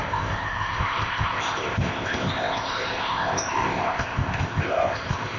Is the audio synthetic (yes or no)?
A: yes